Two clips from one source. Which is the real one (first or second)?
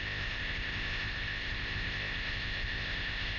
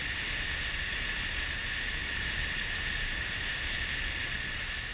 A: second